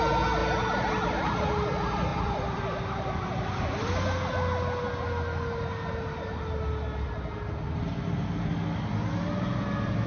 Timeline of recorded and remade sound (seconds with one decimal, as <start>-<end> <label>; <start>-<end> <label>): 0.0-2.1 recorded; 2.1-4.3 remade; 4.3-10.1 recorded